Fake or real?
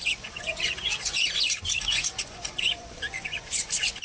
fake